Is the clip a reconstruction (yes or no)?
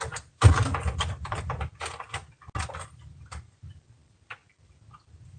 no